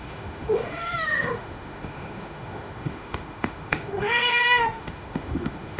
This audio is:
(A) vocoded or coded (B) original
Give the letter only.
A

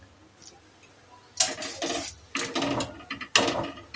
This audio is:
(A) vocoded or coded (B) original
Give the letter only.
B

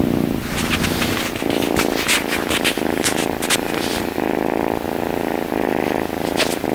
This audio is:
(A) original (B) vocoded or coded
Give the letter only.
A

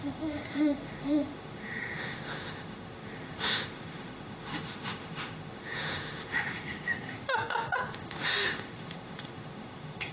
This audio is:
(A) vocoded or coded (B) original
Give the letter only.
A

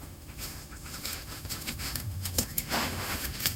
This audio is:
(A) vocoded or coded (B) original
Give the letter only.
A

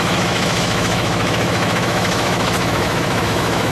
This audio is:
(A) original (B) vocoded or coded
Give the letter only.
B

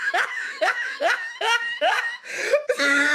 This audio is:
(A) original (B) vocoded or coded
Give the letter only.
B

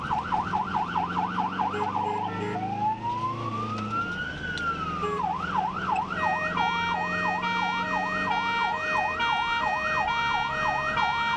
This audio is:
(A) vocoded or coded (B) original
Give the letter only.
B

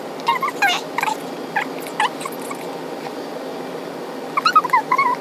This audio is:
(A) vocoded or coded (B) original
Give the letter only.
B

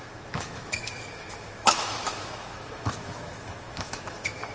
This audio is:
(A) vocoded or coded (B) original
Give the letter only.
A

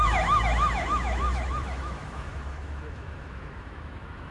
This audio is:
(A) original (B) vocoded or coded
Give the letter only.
B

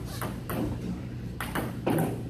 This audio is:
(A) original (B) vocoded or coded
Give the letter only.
A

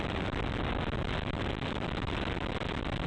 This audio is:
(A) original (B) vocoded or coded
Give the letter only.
A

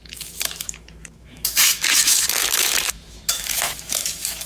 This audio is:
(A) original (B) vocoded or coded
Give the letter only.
B